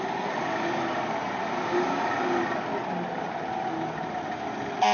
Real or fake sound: real